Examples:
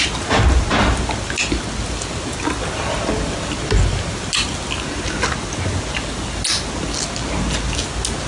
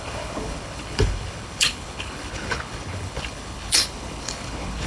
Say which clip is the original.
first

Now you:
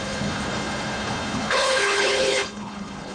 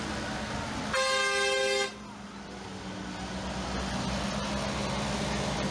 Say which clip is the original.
second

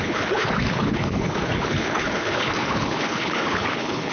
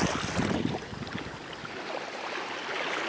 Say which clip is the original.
second